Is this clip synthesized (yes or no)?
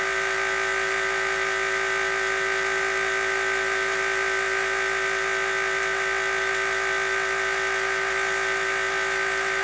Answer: no